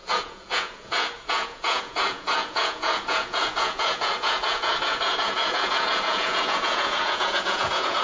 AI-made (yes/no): yes